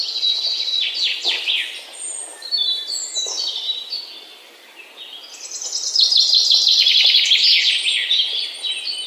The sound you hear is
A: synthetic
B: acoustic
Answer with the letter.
B